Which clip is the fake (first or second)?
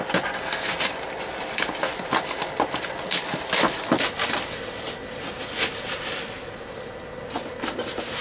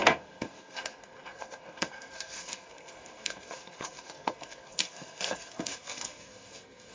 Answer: second